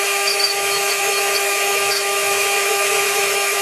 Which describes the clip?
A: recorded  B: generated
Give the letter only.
B